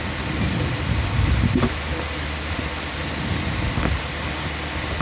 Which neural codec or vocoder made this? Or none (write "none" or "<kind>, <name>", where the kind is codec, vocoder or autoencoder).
none